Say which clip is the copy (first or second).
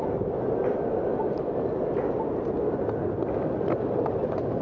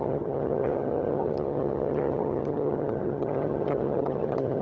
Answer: second